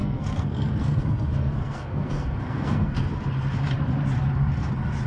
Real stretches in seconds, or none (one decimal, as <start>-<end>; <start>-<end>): 3.1-5.1